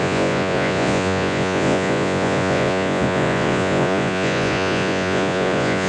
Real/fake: fake